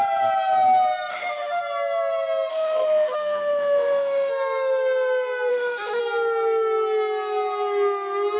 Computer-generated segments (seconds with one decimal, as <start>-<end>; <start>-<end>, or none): 1.1-1.6; 2.5-4.3; 5.5-6.0